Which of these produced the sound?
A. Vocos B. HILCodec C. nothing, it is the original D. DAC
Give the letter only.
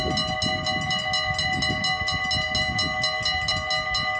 C